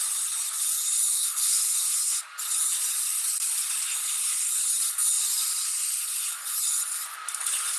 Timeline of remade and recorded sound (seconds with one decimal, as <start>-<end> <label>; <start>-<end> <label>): 0.0-1.1 recorded; 1.1-2.2 remade; 2.2-3.9 recorded; 3.9-4.5 remade; 4.5-7.8 recorded